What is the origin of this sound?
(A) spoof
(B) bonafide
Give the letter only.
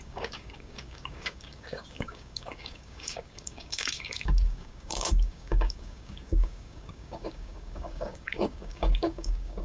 A